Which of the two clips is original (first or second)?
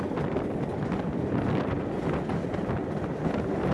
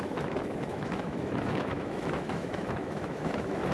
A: first